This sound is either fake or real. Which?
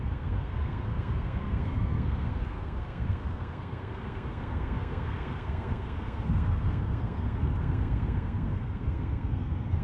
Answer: fake